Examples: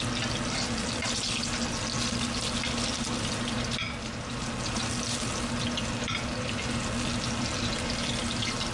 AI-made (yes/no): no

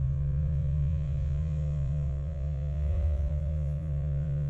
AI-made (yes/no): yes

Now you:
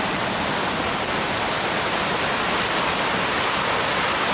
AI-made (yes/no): no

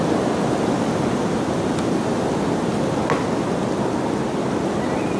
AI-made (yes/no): no